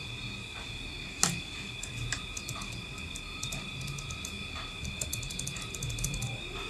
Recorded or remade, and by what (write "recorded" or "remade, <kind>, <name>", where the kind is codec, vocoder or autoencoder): recorded